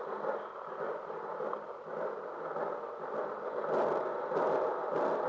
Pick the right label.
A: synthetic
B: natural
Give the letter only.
B